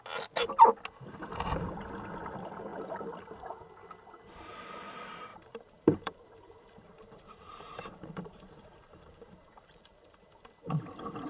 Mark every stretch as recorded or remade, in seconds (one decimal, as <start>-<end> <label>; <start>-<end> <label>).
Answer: 0.0-2.7 recorded; 2.7-3.7 remade; 3.7-5.3 recorded; 5.3-10.5 remade; 10.5-11.3 recorded